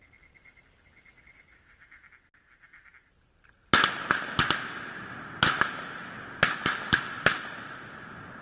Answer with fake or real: real